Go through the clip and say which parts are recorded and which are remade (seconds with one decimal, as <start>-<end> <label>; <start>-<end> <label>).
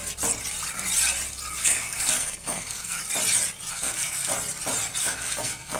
0.0-1.6 recorded; 1.6-3.0 remade; 3.0-3.7 recorded; 3.7-4.3 remade; 4.3-5.0 recorded; 5.0-5.8 remade